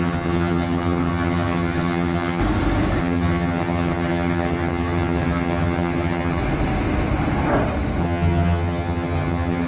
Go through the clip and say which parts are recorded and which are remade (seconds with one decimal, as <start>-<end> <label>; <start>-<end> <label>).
0.0-2.4 remade; 2.4-3.0 recorded; 3.0-6.4 remade; 6.4-8.0 recorded; 8.0-9.7 remade

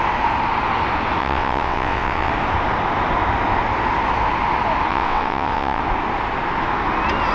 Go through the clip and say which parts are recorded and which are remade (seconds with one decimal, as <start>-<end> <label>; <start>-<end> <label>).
0.0-1.2 recorded; 1.2-2.3 remade; 2.3-4.9 recorded; 4.9-5.8 remade; 5.8-7.3 recorded